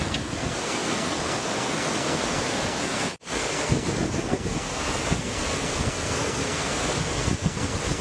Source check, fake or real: fake